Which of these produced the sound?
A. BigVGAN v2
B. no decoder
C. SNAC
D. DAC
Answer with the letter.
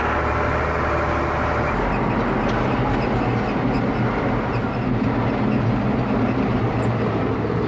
B